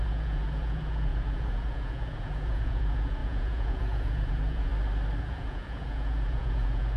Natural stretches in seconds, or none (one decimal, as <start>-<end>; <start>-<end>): 4.7-5.2